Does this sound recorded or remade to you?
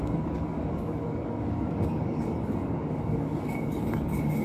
remade